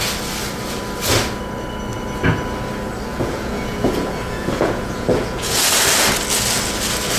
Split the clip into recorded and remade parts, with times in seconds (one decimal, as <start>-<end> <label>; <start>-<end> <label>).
0.0-3.1 recorded; 3.1-5.7 remade; 5.7-7.2 recorded